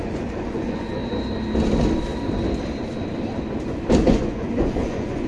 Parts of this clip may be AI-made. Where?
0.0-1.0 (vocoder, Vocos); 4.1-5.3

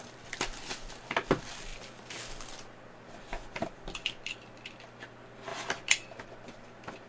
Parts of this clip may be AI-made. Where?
none

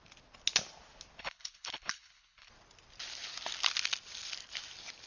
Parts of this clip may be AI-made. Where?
1.2-2.5 (codec, HILCodec)

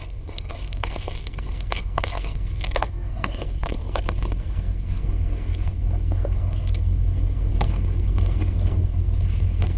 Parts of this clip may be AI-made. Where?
0.0-9.8 (codec, SNAC)

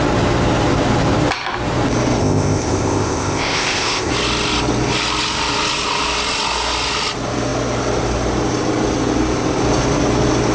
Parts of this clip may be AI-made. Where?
2.2-4.1 (codec, ZipCodec)

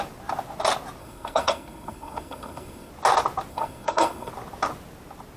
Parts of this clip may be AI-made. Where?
1.0-2.9 (codec, SNAC); 3.5-4.3